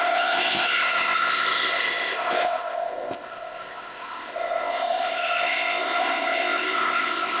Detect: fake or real fake